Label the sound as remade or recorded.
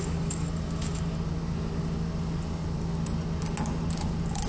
recorded